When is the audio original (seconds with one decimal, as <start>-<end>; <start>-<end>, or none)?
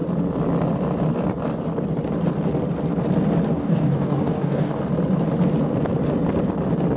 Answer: 0.0-3.5; 4.8-7.0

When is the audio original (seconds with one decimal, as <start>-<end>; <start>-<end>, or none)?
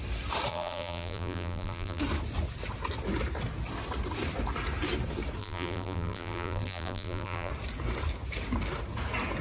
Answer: 0.0-0.5; 2.0-5.4; 7.5-9.4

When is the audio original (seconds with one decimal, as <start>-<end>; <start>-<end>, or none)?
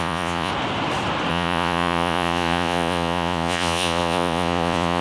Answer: 0.5-1.3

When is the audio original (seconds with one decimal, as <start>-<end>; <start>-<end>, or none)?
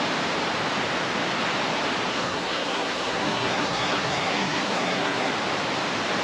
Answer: 0.0-2.1; 5.3-6.2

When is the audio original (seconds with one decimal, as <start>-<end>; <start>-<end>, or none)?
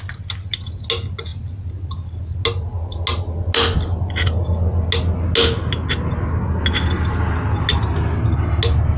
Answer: 0.0-9.0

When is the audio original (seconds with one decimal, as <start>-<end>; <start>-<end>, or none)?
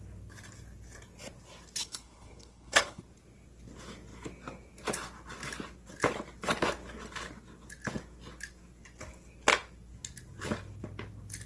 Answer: 0.0-1.8; 3.0-11.5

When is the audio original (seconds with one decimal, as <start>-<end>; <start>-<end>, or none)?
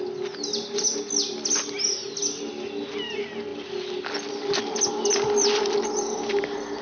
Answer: 0.0-6.8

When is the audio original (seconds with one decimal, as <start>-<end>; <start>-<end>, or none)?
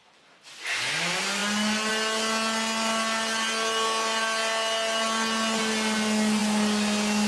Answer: 0.0-7.3